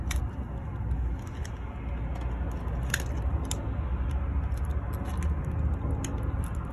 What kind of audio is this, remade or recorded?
recorded